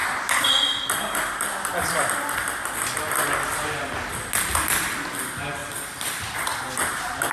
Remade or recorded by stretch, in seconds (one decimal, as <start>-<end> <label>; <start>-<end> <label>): 0.0-0.8 remade; 0.8-5.6 recorded; 5.6-6.6 remade; 6.6-7.3 recorded